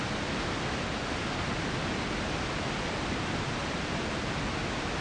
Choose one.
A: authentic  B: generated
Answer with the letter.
A